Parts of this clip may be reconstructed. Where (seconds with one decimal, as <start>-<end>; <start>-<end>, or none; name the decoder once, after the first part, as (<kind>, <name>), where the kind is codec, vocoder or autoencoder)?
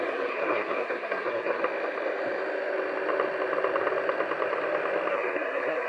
0.0-1.6 (codec, SNAC); 5.1-5.9